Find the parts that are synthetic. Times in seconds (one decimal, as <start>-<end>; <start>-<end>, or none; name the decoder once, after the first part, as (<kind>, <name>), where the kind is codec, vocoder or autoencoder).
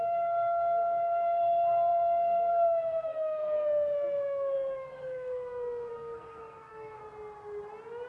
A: 0.0-7.0 (codec, SNAC)